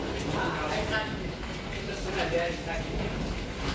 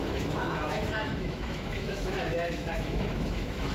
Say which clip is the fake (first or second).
second